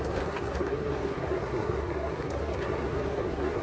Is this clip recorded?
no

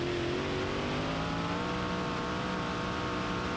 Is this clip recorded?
yes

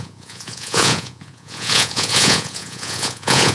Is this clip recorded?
no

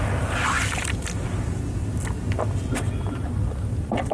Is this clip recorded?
yes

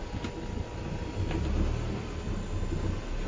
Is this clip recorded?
yes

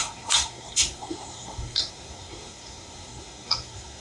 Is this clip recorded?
no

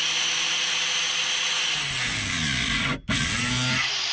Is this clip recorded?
yes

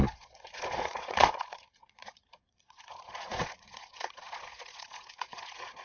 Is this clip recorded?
no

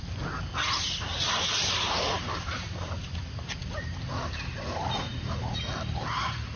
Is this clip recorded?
yes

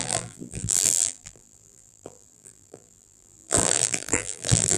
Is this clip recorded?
no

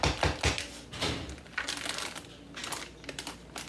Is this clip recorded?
yes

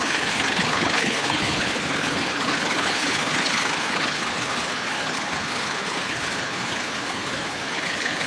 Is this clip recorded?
no